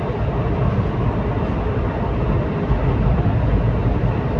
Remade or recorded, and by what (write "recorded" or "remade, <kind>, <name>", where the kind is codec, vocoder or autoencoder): recorded